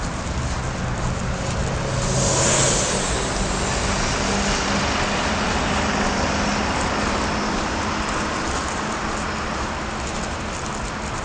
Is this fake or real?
real